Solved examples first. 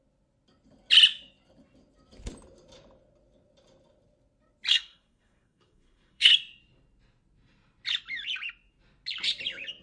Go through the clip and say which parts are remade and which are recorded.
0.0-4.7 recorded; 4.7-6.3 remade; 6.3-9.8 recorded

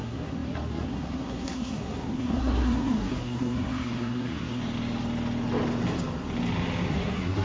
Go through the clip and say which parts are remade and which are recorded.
0.0-4.6 remade; 4.6-6.9 recorded; 6.9-7.4 remade